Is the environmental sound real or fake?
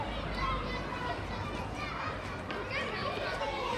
real